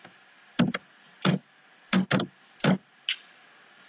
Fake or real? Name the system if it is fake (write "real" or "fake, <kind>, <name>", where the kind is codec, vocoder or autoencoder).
real